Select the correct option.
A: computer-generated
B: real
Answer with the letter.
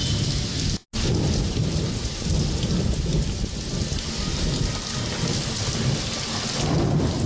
B